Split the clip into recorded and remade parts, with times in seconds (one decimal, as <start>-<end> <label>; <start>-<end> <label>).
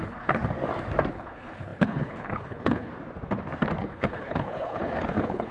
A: 0.0-0.4 remade; 0.4-1.1 recorded; 1.1-2.9 remade; 2.9-3.8 recorded; 3.8-5.5 remade